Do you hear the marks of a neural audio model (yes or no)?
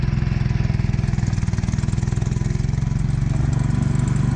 no